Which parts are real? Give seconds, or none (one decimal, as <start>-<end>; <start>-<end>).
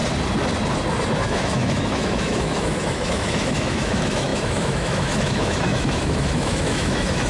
0.0-1.2